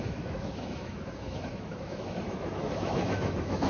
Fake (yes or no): yes